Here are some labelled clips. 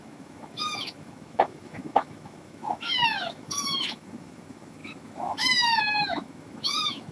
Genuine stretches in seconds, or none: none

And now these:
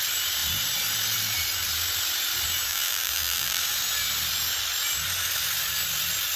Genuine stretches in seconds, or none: 0.0-2.7; 3.6-6.4

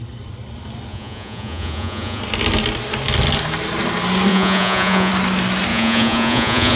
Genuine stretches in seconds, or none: 0.0-0.9; 2.2-4.3; 5.1-5.7

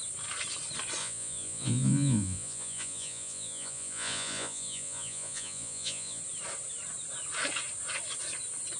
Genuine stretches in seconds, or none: 0.0-1.0; 6.2-8.8

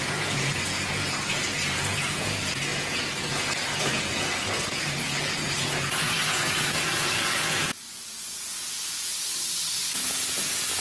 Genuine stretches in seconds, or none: 9.1-9.9

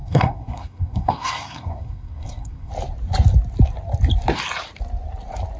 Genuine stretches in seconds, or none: 2.7-5.6

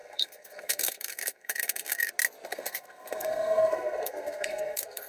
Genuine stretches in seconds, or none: 2.1-2.5

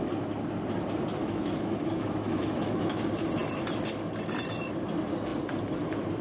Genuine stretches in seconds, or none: 0.0-1.2; 3.0-6.2